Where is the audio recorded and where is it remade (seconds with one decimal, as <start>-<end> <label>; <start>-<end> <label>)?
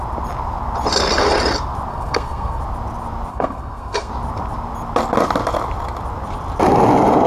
0.0-1.9 recorded; 1.9-2.6 remade; 2.6-3.3 recorded; 3.3-4.1 remade; 4.1-7.3 recorded